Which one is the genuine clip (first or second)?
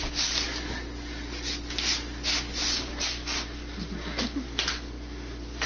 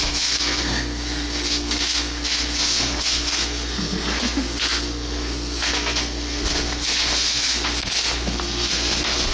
first